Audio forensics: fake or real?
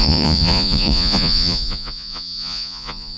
fake